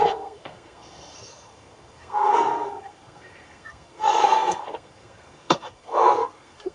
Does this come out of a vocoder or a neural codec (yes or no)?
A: yes